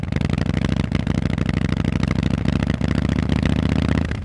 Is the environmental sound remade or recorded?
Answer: recorded